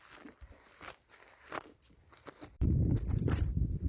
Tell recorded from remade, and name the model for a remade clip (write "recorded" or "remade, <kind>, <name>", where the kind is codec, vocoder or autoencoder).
recorded